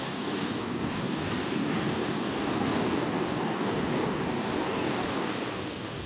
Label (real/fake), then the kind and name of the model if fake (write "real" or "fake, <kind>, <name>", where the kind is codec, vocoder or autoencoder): fake, codec, DAC